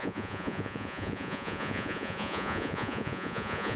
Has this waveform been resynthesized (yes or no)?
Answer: yes